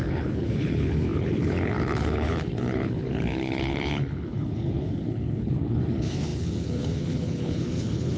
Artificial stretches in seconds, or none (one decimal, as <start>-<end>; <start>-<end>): 0.0-8.2